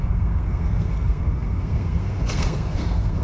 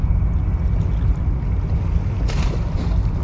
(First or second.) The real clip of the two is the second